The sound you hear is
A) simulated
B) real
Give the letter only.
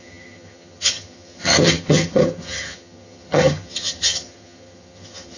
A